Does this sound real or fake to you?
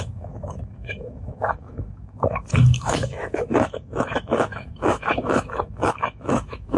fake